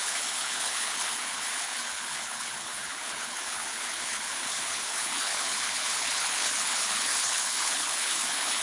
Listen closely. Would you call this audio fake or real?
fake